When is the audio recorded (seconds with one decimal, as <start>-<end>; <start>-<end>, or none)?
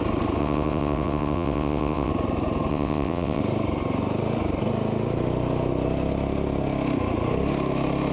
0.0-0.4; 2.1-2.7; 3.4-8.1